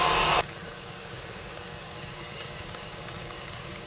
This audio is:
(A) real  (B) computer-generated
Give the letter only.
B